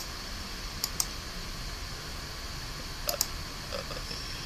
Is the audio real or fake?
real